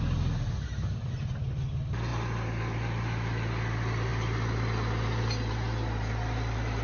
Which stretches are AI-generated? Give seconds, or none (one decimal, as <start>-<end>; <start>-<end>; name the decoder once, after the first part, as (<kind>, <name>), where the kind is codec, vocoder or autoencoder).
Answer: none